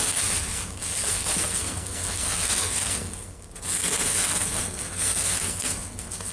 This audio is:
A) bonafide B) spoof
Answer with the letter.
B